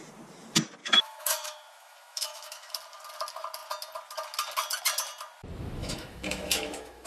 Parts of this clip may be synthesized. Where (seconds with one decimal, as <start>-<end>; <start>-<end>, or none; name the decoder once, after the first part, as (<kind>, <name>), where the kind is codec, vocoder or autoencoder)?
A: 0.8-2.7 (autoencoder, DAC-VAE); 5.8-7.1